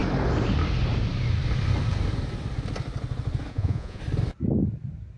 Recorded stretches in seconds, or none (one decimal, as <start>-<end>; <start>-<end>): 0.0-3.5; 4.0-5.2